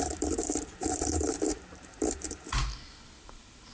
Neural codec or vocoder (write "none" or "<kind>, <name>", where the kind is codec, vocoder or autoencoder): vocoder, BigVGAN v2